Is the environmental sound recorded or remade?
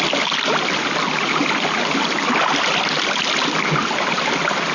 recorded